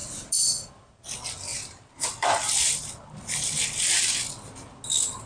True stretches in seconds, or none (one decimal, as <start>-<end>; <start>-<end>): 0.0-5.3